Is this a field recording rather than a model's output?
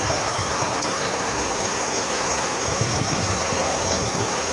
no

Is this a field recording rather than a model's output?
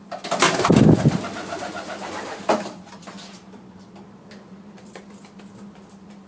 yes